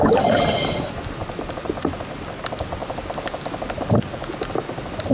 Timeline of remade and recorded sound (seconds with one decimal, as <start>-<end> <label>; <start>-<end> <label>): 0.0-5.1 recorded